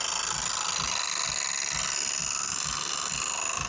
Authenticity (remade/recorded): recorded